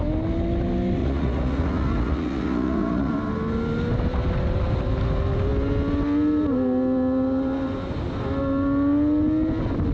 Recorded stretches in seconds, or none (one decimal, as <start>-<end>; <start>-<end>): 0.0-1.0; 3.1-9.9